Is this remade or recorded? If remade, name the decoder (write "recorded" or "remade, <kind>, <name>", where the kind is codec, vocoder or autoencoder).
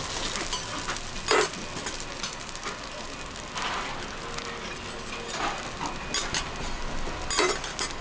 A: recorded